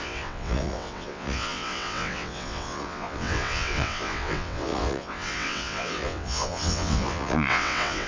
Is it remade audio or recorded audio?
remade